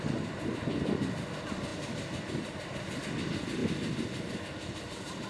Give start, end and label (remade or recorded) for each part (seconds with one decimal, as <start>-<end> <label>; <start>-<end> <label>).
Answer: 0.0-5.3 recorded